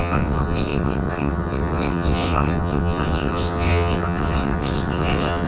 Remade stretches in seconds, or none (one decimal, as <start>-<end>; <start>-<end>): 0.0-5.5

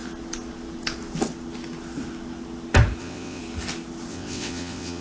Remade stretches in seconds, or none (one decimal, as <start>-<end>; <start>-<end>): 3.0-3.4; 4.1-5.0

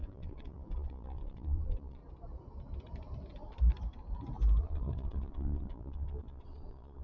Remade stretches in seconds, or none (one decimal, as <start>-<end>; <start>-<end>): 0.0-2.0; 4.6-7.0